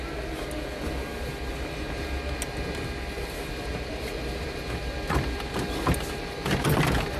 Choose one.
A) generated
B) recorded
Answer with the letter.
B